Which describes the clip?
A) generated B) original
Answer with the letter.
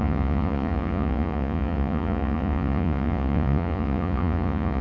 A